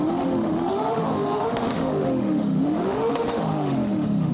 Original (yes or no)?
no